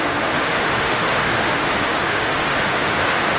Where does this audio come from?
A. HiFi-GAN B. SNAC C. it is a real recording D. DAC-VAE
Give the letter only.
D